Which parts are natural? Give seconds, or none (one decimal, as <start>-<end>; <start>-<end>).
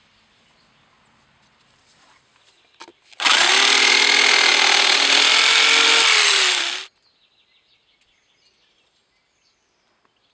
0.0-2.9; 3.5-4.5; 6.5-10.3